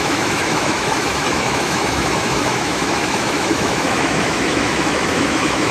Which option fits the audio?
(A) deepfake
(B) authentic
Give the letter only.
A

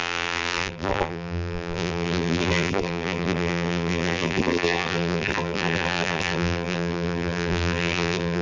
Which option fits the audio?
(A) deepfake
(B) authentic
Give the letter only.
A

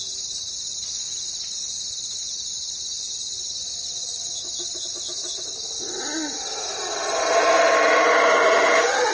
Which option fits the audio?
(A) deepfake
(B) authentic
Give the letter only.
B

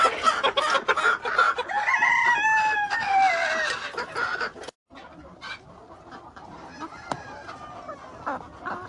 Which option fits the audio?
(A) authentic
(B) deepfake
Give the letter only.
A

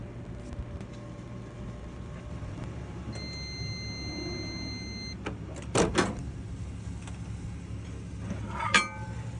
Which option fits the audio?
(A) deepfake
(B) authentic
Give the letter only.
B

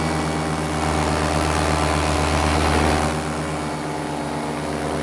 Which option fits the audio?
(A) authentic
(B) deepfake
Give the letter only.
A